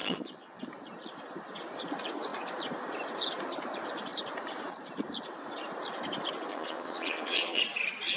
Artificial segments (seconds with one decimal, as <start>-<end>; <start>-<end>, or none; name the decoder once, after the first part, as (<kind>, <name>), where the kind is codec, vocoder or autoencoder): 0.0-0.6 (vocoder, Vocos); 6.5-7.6

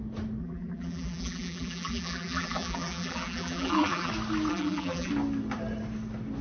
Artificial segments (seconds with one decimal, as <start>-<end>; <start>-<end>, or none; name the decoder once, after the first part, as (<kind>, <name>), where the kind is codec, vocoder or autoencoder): 0.4-4.1 (vocoder, BigVGAN v2); 4.5-5.1

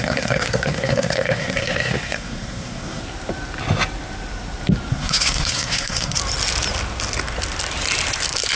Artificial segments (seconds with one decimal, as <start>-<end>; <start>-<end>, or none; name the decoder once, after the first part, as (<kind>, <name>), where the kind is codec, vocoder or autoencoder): 0.0-3.0 (codec, SNAC); 4.9-6.2

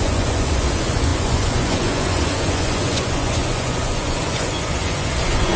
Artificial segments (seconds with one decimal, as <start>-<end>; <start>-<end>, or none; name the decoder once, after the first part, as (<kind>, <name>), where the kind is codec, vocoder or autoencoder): 0.0-5.6 (vocoder, Vocos)

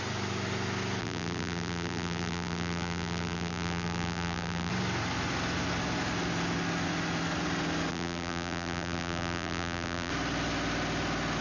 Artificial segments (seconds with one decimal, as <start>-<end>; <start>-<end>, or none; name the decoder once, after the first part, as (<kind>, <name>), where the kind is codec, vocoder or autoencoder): 1.0-4.7 (vocoder, BigVGAN v2); 7.9-10.1

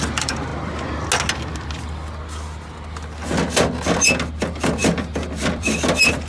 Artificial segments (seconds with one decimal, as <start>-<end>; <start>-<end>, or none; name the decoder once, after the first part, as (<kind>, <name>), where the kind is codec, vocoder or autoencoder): 0.0-0.5 (vocoder, BigVGAN v2); 4.3-4.8; 5.4-6.3

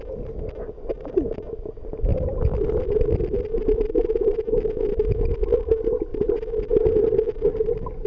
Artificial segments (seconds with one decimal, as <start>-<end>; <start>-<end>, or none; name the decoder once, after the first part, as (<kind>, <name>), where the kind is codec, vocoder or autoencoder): 2.1-3.9 (vocoder, BigVGAN v2); 6.1-6.7

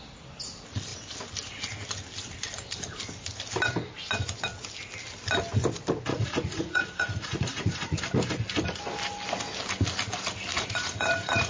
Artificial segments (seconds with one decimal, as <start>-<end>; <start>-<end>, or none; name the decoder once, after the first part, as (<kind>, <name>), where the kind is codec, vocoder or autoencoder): 6.1-8.0 (vocoder, Vocos); 10.5-11.5